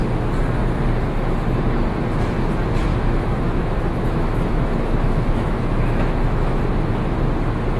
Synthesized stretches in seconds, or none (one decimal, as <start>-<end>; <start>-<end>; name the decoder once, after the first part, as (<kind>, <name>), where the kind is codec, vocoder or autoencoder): 2.9-6.6 (autoencoder, DAC-VAE)